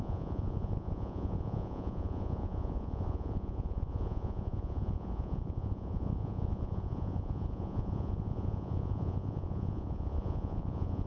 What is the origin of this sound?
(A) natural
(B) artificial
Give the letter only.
B